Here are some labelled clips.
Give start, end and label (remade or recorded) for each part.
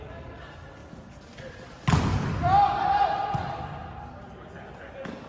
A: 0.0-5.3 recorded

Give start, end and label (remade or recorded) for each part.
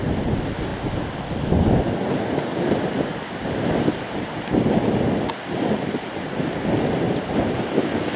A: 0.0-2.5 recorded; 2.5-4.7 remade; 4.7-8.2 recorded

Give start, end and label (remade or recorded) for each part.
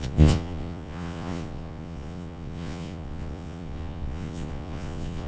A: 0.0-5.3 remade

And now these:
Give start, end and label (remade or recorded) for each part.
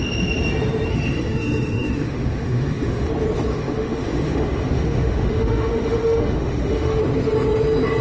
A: 0.0-0.9 recorded; 0.9-3.1 remade; 3.1-3.5 recorded; 3.5-7.0 remade; 7.0-8.0 recorded